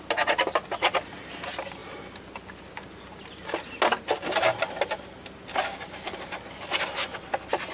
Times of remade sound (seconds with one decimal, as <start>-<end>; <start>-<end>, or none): none